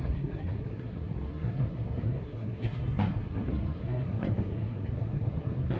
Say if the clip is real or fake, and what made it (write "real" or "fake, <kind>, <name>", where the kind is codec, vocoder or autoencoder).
fake, codec, SNAC